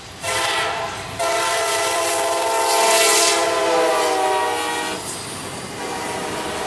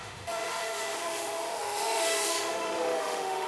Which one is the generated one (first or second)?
second